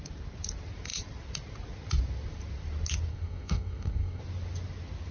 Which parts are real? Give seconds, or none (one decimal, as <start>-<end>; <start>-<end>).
0.0-3.1; 4.2-5.1